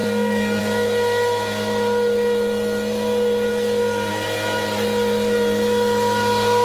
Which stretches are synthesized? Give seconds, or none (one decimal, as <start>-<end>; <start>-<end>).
0.0-0.6; 3.5-4.1